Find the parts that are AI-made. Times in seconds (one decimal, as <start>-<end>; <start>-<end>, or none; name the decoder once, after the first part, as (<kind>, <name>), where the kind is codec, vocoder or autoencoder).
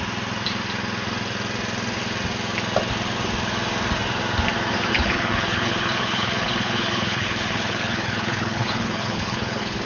4.9-9.9 (codec, HILCodec)